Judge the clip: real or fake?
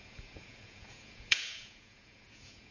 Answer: fake